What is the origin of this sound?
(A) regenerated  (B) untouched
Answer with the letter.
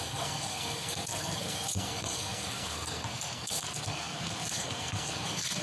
A